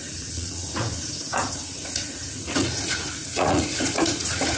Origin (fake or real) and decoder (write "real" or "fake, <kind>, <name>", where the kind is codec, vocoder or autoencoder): fake, vocoder, Vocos